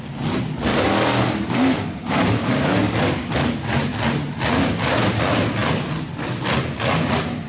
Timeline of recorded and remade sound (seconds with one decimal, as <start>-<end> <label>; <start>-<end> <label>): 0.0-0.7 recorded; 0.7-3.3 remade; 3.3-7.5 recorded